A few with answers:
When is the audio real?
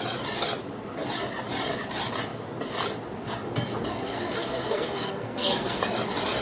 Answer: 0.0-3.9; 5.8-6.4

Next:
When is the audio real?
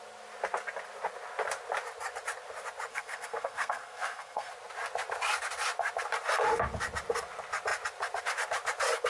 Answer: 0.0-2.9; 4.5-9.1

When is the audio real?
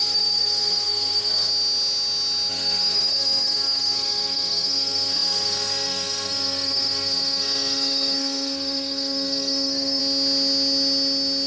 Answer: 1.5-2.5; 10.0-11.5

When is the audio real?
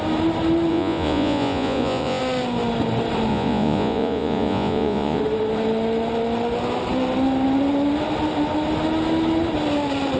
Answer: 0.0-0.7; 2.2-3.3; 5.2-10.2